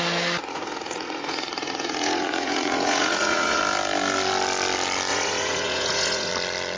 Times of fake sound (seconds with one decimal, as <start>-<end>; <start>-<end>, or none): 0.4-3.6; 5.1-6.3